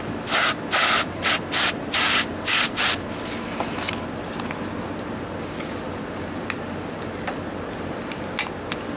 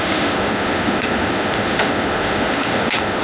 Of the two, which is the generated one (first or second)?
second